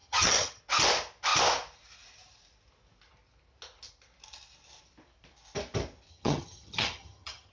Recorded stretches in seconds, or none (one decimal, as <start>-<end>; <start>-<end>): 0.6-6.1